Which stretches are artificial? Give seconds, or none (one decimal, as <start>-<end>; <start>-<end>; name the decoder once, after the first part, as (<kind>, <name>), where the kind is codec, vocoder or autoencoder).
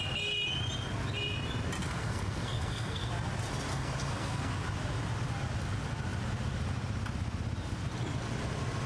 1.8-3.1 (codec, SNAC); 3.7-4.5